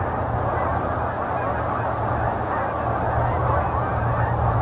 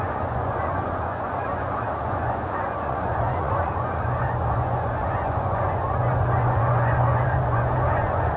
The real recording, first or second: first